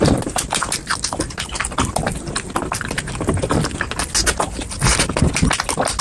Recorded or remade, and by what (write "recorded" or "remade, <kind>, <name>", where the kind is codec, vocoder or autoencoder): recorded